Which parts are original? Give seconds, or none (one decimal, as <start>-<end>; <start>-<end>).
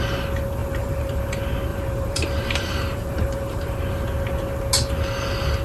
0.0-0.6; 1.2-1.7; 3.8-5.6